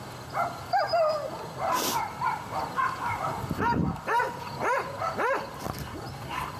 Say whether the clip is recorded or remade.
recorded